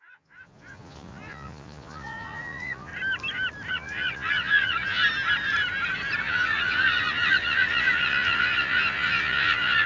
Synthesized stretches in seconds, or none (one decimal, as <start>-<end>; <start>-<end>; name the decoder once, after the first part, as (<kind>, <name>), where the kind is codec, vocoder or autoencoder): 0.0-2.9 (vocoder, Vocos); 3.7-5.0; 6.2-9.9

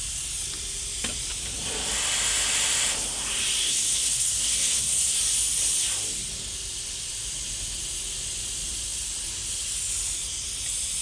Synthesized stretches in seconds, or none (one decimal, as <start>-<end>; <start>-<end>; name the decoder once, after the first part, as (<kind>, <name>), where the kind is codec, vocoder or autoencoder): 3.6-5.2 (codec, SNAC)